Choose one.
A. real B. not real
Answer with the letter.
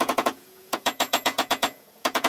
B